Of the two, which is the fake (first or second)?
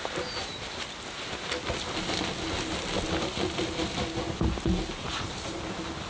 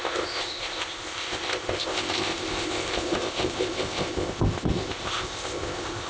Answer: second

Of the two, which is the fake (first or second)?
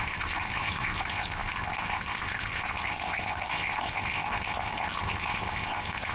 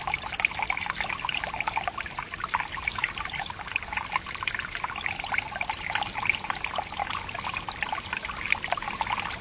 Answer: first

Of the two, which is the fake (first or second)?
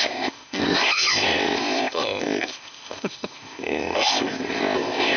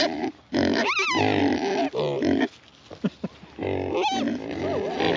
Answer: first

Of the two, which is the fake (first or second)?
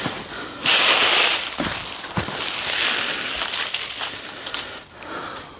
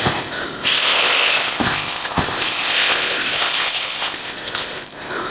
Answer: second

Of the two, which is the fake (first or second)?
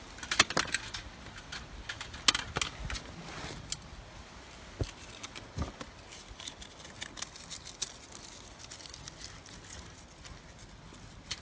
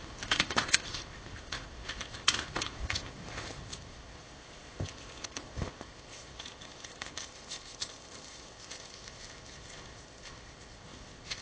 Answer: second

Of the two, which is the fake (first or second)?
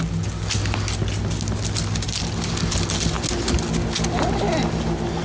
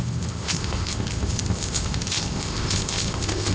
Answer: second